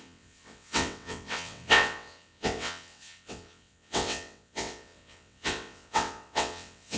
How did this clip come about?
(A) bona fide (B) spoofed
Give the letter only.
B